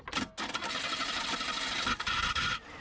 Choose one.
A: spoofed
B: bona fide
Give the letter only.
B